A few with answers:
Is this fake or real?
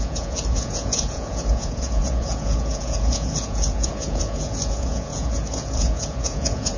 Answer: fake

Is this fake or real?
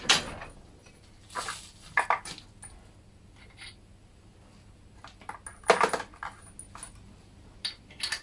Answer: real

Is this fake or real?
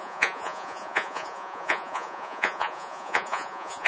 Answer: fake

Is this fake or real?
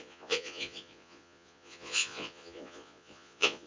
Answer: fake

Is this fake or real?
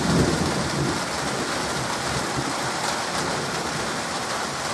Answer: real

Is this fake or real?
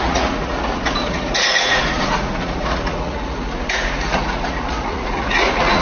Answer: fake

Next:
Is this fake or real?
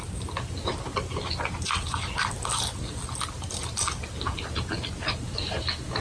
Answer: real